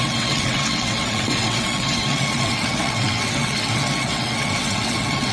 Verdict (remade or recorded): remade